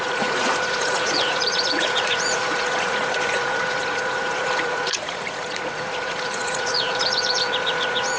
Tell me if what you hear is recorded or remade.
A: remade